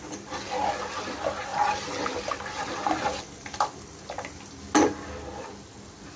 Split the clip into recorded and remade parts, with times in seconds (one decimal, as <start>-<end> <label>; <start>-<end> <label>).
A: 0.0-6.2 recorded